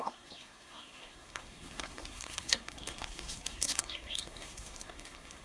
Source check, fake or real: fake